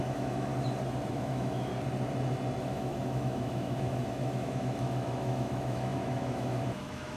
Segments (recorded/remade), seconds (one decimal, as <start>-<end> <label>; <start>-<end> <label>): 0.0-0.5 remade; 0.5-1.1 recorded; 1.1-1.7 remade; 1.7-2.6 recorded; 2.6-7.2 remade